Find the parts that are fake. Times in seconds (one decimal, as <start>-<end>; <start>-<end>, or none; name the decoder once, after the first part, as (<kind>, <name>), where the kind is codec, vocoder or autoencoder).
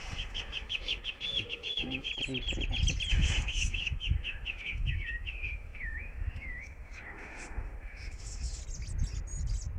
0.0-2.1 (autoencoder, DAC-VAE); 3.1-8.6